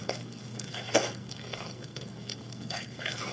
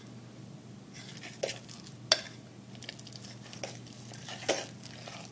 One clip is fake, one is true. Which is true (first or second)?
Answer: second